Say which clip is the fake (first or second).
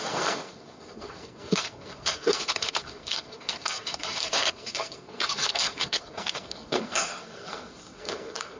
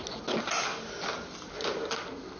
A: first